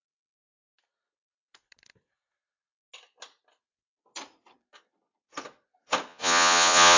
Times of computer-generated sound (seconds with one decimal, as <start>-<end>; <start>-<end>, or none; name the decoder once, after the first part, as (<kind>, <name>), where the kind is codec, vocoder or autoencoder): 6.1-7.0 (vocoder, Vocos)